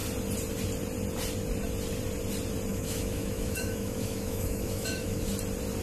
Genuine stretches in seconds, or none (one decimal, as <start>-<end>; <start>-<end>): 0.0-2.7; 5.3-5.8